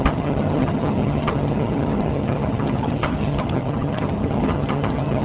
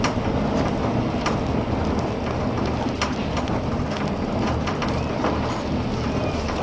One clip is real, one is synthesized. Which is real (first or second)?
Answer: second